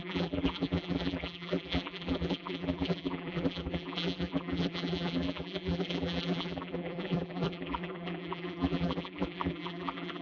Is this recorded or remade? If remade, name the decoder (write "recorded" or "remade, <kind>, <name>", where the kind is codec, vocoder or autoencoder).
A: remade, vocoder, BigVGAN v2